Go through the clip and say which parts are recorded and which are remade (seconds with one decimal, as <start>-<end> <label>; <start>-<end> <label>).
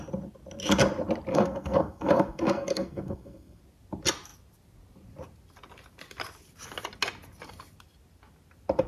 0.0-1.3 recorded; 1.3-3.6 remade; 3.6-8.9 recorded